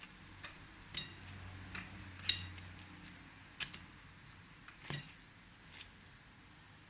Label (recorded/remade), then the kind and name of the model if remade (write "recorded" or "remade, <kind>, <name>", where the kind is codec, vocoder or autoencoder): recorded